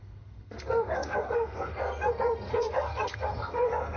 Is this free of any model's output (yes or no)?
no